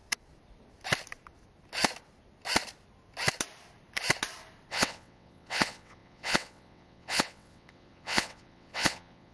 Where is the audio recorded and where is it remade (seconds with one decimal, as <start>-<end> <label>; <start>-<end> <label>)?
0.0-4.7 recorded; 4.7-9.3 remade